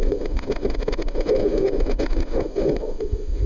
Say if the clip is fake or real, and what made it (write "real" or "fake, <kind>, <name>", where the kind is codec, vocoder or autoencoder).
fake, autoencoder, DAC-VAE